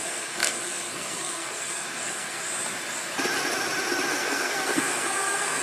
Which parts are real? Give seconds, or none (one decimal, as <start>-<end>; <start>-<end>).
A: 2.4-4.1